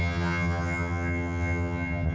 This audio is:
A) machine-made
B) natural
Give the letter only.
A